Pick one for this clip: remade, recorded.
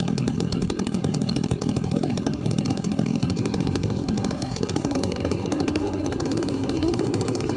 remade